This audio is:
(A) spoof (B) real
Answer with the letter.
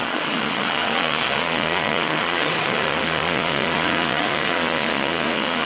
A